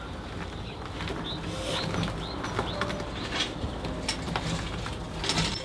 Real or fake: real